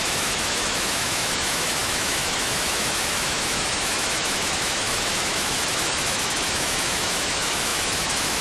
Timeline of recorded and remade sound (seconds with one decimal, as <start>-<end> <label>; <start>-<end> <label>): 0.0-8.4 remade